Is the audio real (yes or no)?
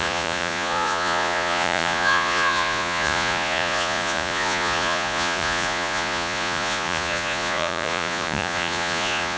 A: no